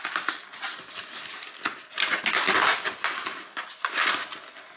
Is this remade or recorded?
recorded